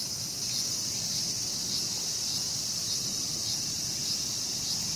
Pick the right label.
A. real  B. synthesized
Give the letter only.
A